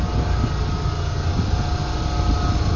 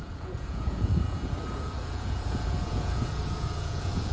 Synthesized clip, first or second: second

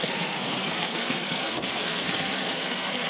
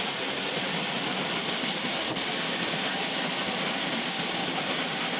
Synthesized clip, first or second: first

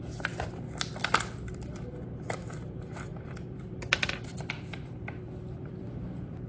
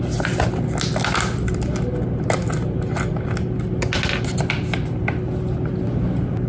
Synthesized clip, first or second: first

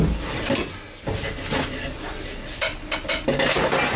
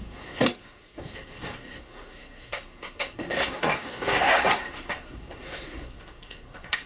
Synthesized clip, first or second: second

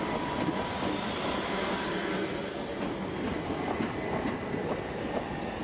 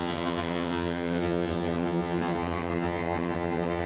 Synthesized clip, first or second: second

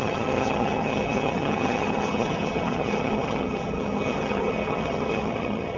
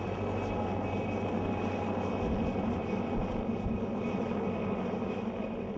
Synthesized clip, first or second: first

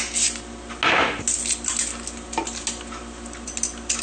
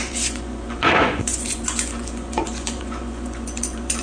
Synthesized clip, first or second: second